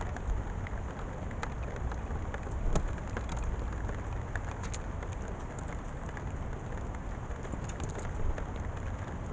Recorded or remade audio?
recorded